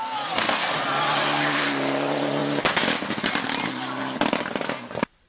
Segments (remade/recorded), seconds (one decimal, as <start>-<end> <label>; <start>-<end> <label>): 0.0-5.3 recorded